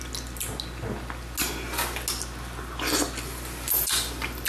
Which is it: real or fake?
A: real